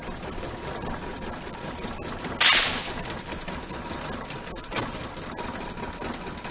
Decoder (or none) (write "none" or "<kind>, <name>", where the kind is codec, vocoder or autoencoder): none